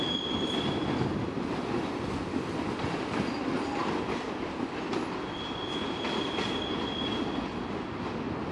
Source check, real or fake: real